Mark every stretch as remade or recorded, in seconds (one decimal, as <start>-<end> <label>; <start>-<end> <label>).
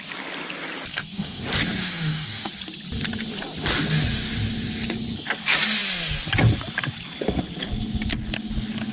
0.0-0.9 recorded; 0.9-1.4 remade; 1.4-1.8 recorded; 1.8-2.5 remade; 2.5-8.9 recorded